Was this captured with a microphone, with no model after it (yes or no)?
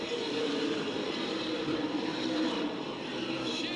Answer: no